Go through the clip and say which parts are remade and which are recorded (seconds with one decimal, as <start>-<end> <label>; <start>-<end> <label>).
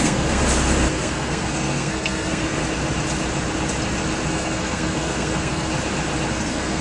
0.0-0.4 remade; 0.4-0.9 recorded; 0.9-2.6 remade; 2.6-4.3 recorded; 4.3-5.7 remade; 5.7-6.3 recorded; 6.3-6.8 remade